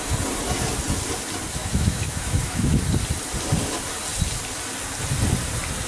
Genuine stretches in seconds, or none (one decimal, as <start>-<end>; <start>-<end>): 0.0-1.6; 2.8-5.9